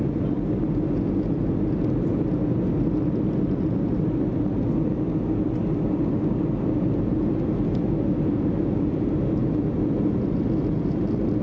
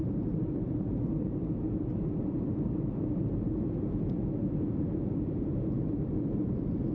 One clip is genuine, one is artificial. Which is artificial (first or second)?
second